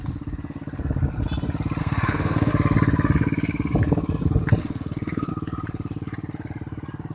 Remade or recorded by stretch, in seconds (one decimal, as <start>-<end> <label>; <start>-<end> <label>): 0.0-1.8 recorded; 1.8-2.5 remade; 2.5-4.6 recorded; 4.6-5.3 remade; 5.3-7.1 recorded